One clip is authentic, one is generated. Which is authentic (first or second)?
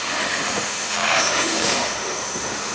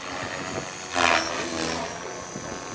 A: second